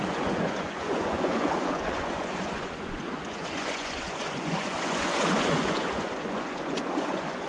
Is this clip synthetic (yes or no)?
yes